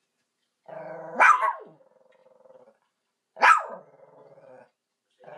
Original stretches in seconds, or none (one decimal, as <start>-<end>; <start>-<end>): 0.0-5.4